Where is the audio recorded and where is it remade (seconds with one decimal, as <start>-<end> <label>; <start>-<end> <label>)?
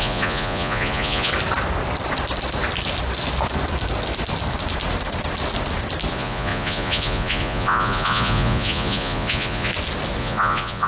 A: 0.0-1.3 remade; 1.3-6.1 recorded; 6.1-9.7 remade; 9.7-10.2 recorded; 10.2-10.9 remade